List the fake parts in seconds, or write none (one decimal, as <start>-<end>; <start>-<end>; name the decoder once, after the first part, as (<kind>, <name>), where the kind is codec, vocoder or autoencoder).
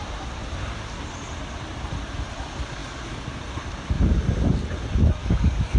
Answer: 5.2-5.8 (codec, DAC)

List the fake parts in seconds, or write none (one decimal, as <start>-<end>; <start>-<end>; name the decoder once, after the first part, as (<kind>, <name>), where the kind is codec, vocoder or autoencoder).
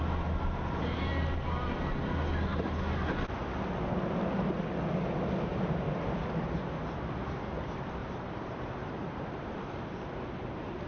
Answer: 5.5-6.0 (vocoder, BigVGAN v2); 8.0-10.1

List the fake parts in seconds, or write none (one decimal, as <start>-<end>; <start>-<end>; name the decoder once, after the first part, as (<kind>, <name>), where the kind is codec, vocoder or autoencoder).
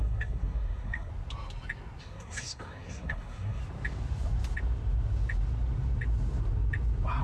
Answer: 0.0-1.1 (codec, SNAC); 2.0-3.6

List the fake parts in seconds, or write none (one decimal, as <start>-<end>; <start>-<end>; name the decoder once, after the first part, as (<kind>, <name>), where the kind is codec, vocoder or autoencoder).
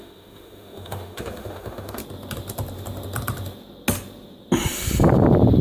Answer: 0.0-2.0 (autoencoder, DAC-VAE)